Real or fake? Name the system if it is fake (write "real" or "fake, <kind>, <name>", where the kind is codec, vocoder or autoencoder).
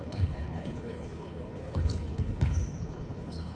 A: fake, codec, HILCodec